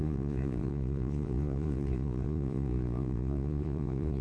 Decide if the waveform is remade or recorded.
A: remade